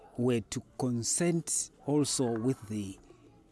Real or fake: real